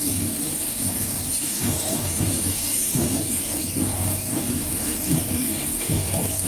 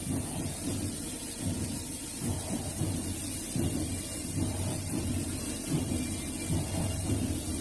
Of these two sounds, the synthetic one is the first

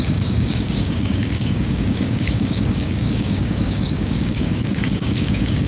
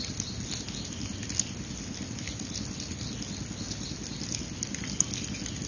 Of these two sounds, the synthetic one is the first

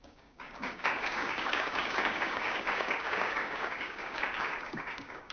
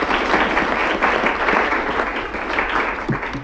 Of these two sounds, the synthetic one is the first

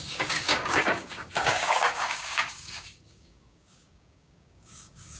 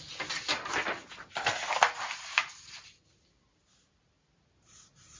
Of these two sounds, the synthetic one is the first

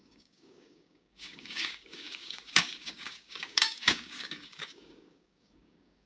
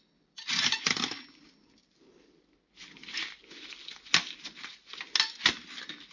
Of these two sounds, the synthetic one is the first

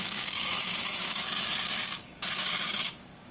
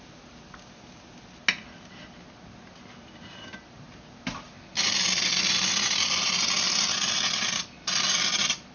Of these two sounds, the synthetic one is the first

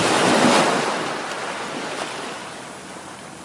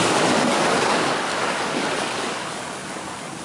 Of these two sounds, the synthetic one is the second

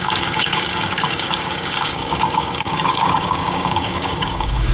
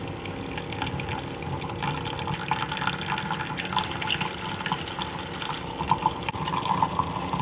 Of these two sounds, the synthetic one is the first